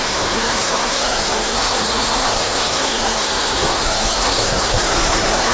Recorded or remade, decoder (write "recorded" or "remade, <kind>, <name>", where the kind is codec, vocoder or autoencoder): remade, codec, SNAC